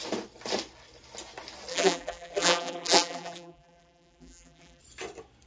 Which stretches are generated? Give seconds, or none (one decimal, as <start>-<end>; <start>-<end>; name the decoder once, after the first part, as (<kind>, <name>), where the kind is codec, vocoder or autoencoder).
1.7-4.8 (vocoder, BigVGAN v2)